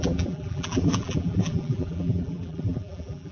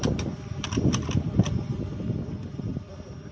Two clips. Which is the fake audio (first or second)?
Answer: first